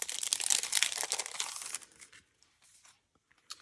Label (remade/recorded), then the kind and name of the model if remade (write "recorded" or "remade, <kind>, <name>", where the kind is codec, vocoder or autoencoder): recorded